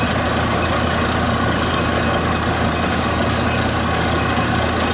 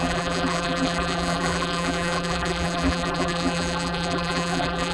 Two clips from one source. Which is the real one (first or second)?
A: first